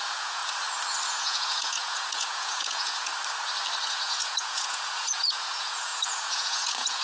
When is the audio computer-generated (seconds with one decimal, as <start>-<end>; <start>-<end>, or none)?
0.0-0.4; 1.1-3.1; 3.9-7.0